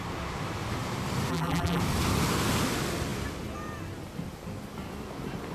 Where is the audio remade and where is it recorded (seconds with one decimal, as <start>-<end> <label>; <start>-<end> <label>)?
0.0-1.3 recorded; 1.3-1.8 remade; 1.8-5.5 recorded